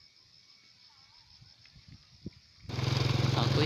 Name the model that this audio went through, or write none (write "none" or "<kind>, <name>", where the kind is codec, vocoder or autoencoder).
none